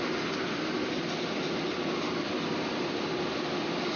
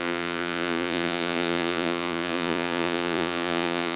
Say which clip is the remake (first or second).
second